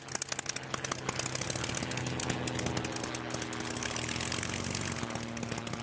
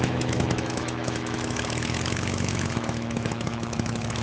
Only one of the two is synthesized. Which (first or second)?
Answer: second